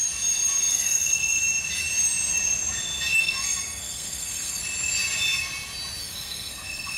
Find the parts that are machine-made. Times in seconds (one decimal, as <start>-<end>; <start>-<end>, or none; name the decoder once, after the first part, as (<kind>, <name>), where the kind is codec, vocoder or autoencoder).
0.7-1.4 (codec, SNAC); 3.2-4.6; 6.0-7.0